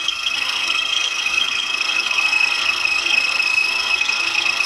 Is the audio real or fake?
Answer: fake